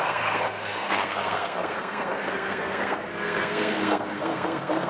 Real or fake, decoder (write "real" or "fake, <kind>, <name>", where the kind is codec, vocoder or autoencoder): fake, codec, SNAC